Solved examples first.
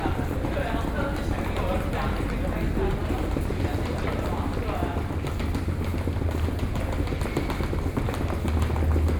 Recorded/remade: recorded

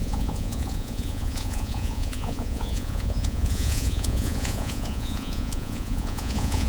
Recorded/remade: remade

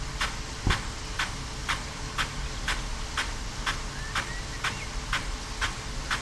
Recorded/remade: recorded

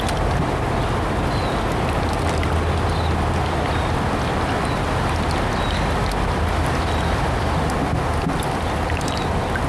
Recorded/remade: recorded